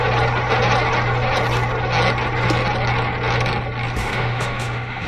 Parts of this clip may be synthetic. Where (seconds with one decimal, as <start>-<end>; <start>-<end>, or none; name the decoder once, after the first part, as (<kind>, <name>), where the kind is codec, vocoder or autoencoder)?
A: 4.0-5.1 (autoencoder, DAC-VAE)